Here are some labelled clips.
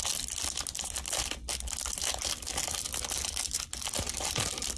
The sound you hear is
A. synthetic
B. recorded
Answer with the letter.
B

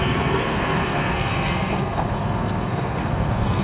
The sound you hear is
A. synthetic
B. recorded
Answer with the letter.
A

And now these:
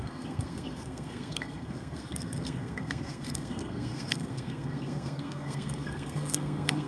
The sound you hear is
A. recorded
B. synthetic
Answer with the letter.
B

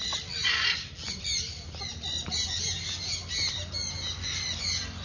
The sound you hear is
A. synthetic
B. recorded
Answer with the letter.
B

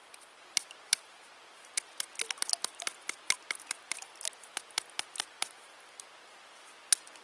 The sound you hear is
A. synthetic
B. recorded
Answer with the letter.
B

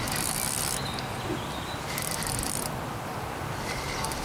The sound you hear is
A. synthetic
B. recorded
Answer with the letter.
B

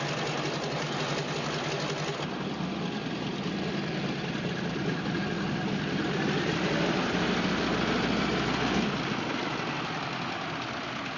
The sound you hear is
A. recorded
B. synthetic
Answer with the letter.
A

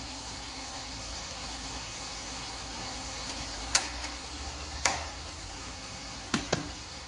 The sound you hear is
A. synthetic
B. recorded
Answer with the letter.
A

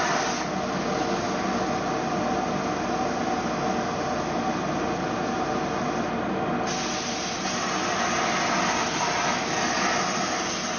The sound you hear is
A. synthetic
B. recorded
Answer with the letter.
B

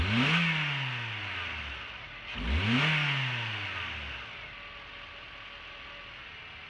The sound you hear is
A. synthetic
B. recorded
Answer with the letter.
B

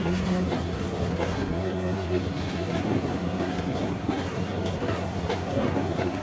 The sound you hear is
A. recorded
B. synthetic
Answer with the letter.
B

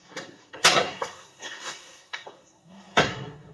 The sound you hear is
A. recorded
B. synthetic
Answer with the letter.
B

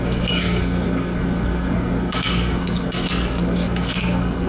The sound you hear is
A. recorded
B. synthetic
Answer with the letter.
B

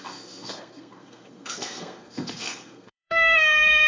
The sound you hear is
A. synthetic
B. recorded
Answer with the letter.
A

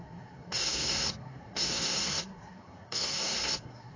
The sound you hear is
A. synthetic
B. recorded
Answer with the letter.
A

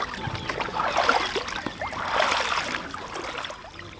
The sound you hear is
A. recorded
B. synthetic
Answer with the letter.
A